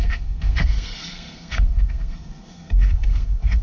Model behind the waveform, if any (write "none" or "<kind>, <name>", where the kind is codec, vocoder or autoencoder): codec, SNAC